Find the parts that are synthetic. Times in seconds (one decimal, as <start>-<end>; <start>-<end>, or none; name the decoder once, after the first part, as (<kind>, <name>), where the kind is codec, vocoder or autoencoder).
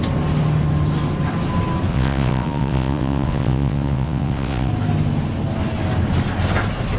1.9-4.7 (vocoder, WaveNeXt)